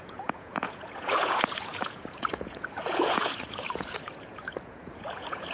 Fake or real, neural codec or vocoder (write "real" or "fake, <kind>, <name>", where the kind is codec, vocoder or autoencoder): fake, vocoder, Vocos